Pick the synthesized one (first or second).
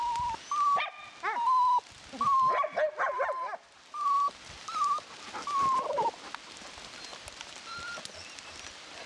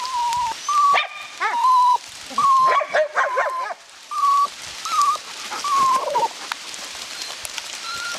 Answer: second